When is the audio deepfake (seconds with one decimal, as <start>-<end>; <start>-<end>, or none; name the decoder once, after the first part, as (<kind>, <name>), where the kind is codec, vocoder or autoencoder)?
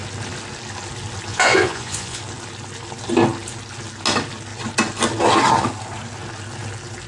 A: 1.3-2.2 (vocoder, Vocos)